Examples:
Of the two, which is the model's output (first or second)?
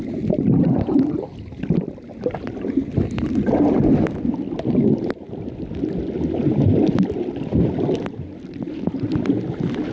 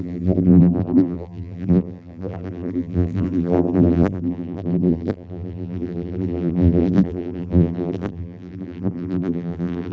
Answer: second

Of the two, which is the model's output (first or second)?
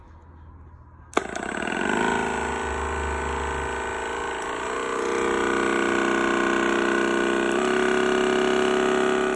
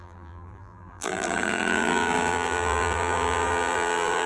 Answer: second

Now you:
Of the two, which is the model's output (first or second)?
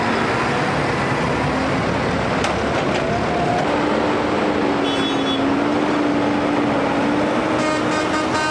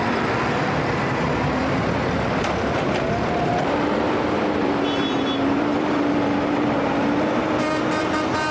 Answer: second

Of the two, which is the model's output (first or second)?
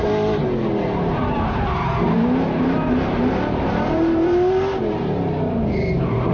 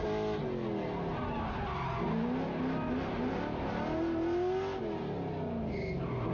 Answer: first